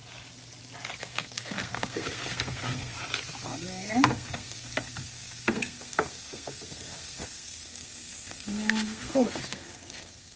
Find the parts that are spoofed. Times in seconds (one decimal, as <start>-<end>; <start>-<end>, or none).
1.0-2.9; 3.4-10.4